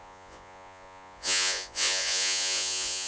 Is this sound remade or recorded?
remade